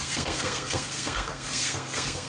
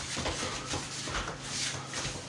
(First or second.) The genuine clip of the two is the second